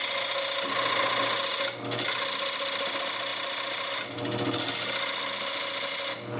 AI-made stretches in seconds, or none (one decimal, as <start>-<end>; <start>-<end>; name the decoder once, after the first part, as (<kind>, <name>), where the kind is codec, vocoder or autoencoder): none